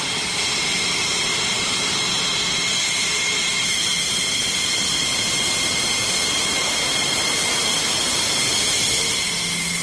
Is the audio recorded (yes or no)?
yes